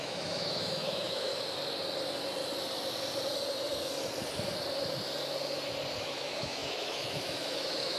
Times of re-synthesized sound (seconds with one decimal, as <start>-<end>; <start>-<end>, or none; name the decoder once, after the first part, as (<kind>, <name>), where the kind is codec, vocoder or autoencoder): 0.0-1.3 (autoencoder, DAC-VAE); 6.0-8.0